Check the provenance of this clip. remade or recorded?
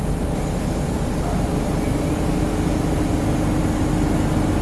recorded